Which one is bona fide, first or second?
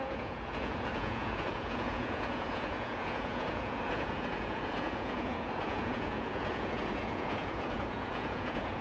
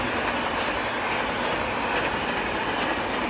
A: second